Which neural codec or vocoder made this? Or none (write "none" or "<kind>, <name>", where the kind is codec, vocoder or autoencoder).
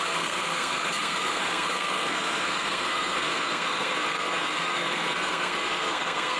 codec, SNAC